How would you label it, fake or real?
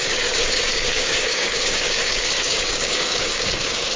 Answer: fake